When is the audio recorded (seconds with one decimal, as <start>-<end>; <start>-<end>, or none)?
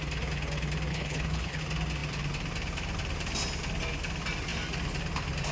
0.0-0.9; 1.6-5.5